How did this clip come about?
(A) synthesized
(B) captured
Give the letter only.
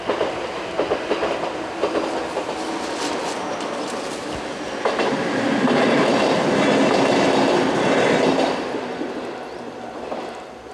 B